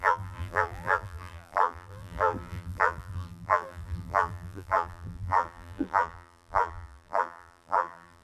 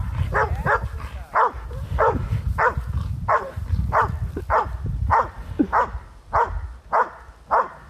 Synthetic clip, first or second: first